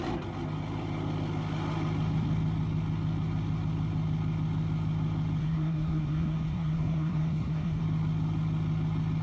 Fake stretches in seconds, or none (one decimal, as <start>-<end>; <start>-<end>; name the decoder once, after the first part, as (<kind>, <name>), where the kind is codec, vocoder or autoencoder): 5.4-7.8 (codec, SNAC)